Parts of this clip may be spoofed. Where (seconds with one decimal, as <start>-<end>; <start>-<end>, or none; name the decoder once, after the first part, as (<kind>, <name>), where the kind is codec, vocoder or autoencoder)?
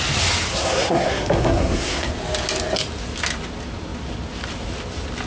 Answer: 0.5-2.1 (codec, SNAC)